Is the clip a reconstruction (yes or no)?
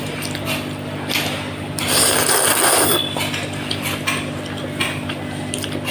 no